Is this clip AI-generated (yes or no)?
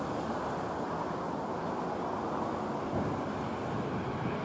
no